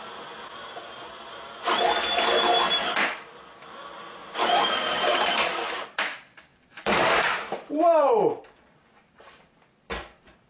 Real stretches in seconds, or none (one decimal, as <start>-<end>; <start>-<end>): 0.0-4.2; 5.3-6.5